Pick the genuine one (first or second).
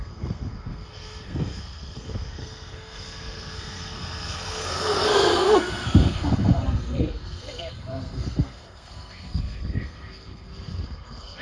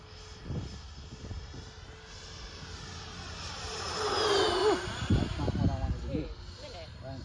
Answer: second